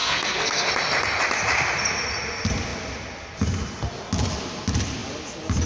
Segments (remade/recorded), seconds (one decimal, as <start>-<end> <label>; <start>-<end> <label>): 0.0-0.7 remade; 0.7-5.7 recorded